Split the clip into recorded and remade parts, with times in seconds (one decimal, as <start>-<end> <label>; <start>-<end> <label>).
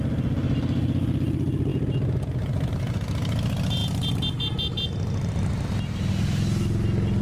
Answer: 0.0-7.2 recorded